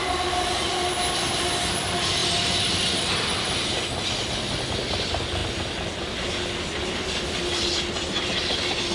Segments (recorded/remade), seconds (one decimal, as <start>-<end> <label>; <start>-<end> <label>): 0.0-8.9 recorded